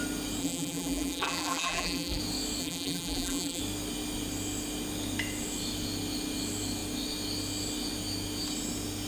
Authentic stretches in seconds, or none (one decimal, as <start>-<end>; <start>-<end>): 0.0-0.4; 2.2-2.6; 3.6-9.1